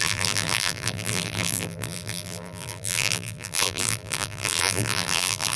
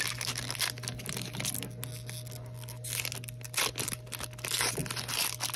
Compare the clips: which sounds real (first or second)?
second